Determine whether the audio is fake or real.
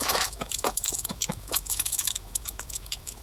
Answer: fake